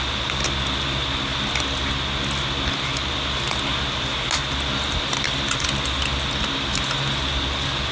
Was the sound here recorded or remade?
recorded